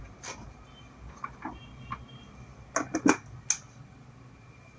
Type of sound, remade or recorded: recorded